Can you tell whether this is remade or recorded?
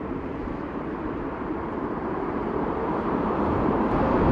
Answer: remade